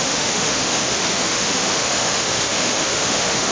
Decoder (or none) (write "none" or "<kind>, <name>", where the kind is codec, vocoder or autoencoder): autoencoder, DAC-VAE